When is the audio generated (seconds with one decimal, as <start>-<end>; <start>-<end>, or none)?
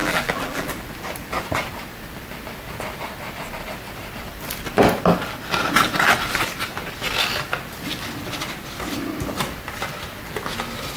0.0-0.7